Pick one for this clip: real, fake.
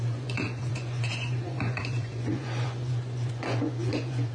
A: fake